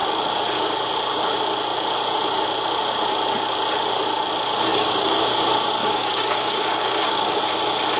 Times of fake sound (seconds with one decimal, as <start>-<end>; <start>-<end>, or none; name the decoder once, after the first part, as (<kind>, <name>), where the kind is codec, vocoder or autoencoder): 4.7-5.2 (codec, DAC); 5.8-7.4

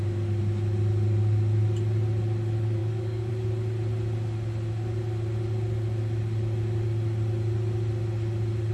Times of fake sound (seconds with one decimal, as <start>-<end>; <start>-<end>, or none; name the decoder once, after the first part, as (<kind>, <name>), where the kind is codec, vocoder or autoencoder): 2.8-3.3 (codec, DAC)

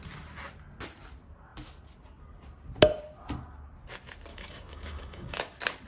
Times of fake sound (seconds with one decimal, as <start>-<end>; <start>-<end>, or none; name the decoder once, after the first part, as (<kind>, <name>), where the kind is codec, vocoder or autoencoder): 4.3-5.4 (codec, DAC)

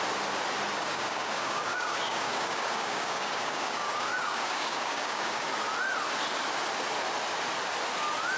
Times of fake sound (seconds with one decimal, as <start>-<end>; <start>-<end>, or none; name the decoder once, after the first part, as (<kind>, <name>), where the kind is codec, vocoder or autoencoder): 0.8-5.4 (codec, DAC)